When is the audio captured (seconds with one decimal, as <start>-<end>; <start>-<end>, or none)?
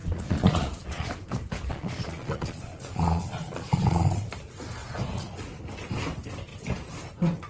1.1-1.7; 4.3-7.5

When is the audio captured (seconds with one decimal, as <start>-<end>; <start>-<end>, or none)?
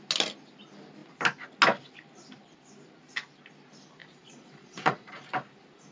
0.0-4.0; 5.2-5.9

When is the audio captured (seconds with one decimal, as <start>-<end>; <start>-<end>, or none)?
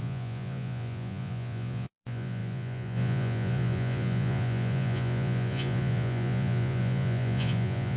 none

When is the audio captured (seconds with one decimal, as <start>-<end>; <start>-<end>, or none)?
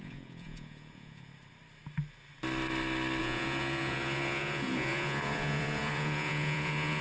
1.3-3.2